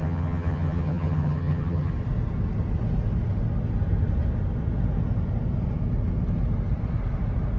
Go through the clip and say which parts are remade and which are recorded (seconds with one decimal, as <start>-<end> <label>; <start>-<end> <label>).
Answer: 0.0-1.9 remade; 1.9-7.6 recorded